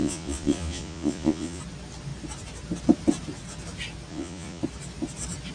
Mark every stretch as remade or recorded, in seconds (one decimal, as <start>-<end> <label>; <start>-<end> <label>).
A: 0.0-1.6 remade; 1.6-4.1 recorded; 4.1-4.6 remade; 4.6-5.5 recorded